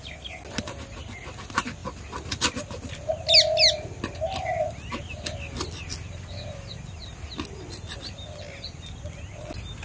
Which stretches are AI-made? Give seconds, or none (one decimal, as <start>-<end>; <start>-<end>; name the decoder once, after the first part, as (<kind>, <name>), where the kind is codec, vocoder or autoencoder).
none